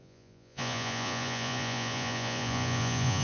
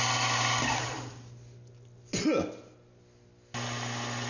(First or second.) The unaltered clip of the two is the second